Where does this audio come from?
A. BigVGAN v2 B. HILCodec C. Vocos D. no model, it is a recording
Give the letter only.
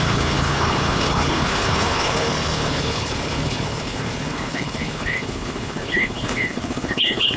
B